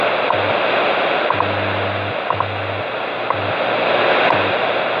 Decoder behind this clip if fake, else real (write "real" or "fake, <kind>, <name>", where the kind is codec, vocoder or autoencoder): real